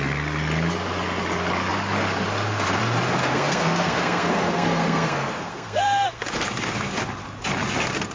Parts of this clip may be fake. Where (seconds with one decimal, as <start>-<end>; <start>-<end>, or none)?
3.2-6.2